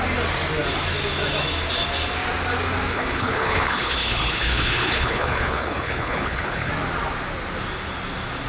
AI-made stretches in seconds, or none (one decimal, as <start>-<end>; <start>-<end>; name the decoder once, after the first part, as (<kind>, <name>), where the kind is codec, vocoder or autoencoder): 2.9-6.7 (codec, HILCodec)